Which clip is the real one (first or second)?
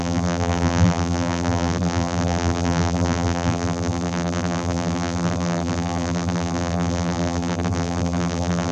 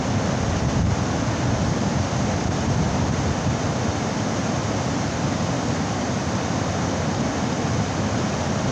second